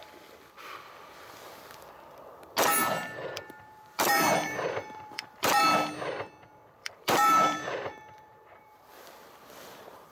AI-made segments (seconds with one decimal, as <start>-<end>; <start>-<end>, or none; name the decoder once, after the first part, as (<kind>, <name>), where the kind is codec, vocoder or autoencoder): 2.8-5.6 (vocoder, BigVGAN v2); 6.8-9.1